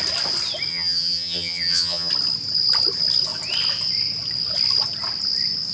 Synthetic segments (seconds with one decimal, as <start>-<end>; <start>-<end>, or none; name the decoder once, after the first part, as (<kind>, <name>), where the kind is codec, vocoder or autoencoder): 0.7-2.1 (vocoder, HiFi-GAN)